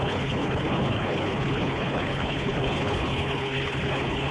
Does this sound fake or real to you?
fake